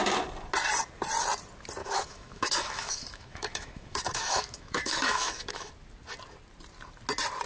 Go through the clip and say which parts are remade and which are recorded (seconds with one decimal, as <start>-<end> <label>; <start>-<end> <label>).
0.0-1.8 recorded; 1.8-5.7 remade; 5.7-7.5 recorded